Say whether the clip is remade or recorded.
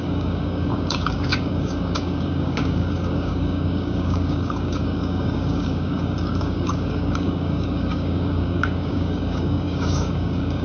remade